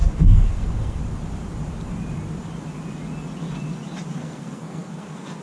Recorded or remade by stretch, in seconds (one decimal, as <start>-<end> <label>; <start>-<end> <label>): 0.0-1.0 remade; 1.0-4.2 recorded; 4.2-5.4 remade